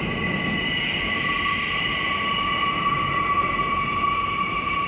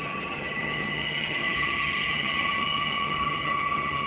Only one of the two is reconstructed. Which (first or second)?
second